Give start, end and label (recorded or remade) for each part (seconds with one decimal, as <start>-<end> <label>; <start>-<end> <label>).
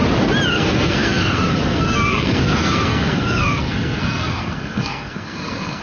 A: 0.0-0.5 recorded; 0.5-5.8 remade